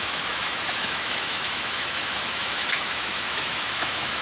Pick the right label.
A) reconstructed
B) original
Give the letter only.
A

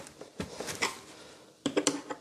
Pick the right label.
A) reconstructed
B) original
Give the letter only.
B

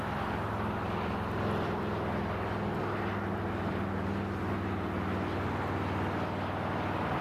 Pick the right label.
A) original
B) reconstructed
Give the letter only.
A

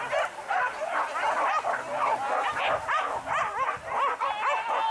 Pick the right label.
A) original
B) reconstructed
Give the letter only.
A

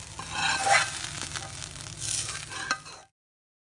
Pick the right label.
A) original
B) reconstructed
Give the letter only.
A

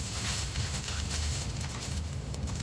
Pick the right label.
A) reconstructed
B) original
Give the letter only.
A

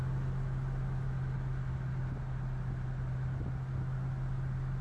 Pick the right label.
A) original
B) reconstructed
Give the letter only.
A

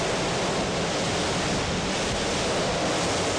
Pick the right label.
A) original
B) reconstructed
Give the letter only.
A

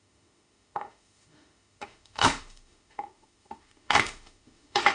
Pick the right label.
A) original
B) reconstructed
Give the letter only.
B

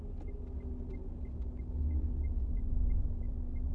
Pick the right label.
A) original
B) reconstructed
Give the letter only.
A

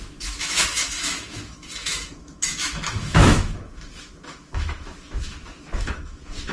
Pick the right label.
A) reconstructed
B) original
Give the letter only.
A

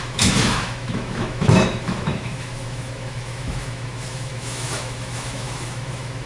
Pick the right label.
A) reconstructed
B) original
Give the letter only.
A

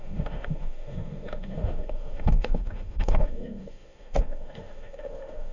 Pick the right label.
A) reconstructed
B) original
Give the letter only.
A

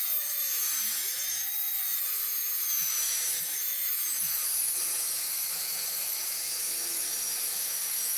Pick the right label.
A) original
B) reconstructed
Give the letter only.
B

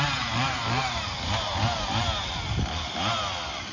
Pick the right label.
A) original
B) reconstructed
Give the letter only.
A